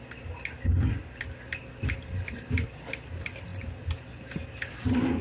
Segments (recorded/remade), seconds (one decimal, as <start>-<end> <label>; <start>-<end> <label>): 0.0-5.2 recorded